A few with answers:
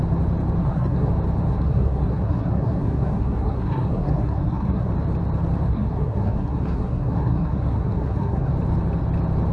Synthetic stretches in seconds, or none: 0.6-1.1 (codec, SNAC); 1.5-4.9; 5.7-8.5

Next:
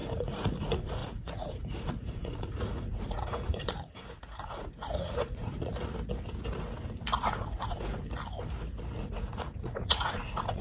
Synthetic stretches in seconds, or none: 0.0-5.7 (vocoder, Vocos); 7.2-8.0; 9.0-10.6

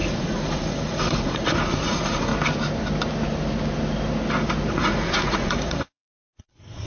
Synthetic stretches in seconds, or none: 0.0-2.3 (vocoder, Vocos); 4.7-6.9

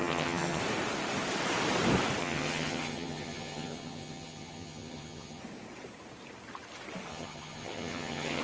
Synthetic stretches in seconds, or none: 0.0-0.6 (vocoder, HiFi-GAN); 2.2-5.4; 7.1-8.4

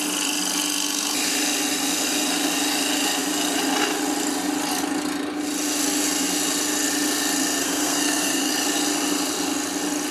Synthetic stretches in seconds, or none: 7.6-8.5 (codec, SNAC)

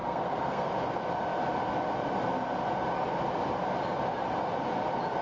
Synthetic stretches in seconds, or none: 0.0-0.7 (codec, SNAC)

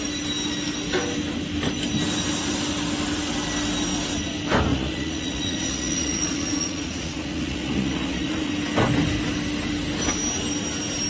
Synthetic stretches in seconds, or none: 4.7-8.5 (vocoder, Vocos)